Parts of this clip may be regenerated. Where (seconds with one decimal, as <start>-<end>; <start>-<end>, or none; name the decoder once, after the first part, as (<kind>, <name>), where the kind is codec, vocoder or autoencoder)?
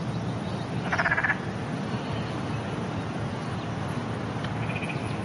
none